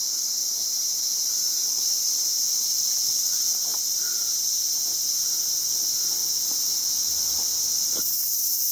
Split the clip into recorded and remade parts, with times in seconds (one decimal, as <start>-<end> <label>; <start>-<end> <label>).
0.0-0.4 recorded; 0.4-2.1 remade; 2.1-8.7 recorded